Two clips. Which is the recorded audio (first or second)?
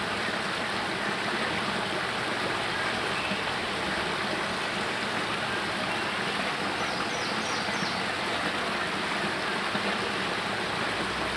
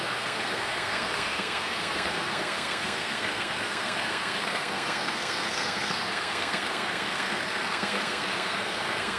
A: first